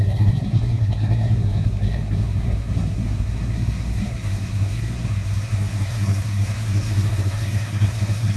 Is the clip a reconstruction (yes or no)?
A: yes